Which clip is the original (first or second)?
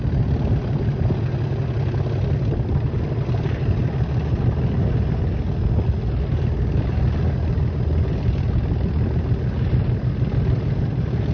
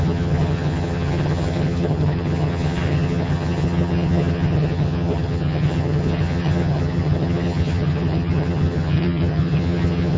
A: first